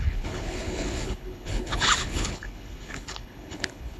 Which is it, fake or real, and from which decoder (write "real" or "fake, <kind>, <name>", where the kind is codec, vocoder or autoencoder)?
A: fake, codec, HILCodec